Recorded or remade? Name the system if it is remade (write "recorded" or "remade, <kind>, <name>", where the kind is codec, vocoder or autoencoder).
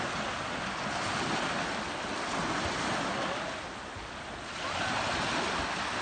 recorded